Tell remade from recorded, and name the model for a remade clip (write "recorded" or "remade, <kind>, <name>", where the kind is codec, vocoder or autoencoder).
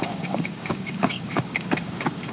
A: remade, codec, DAC